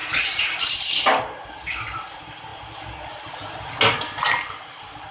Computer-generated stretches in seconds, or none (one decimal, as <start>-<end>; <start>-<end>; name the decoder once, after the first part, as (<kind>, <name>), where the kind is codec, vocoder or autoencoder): none